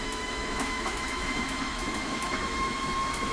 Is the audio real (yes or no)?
no